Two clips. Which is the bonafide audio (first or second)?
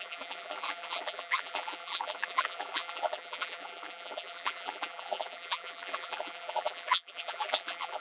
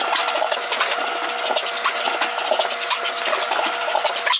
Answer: second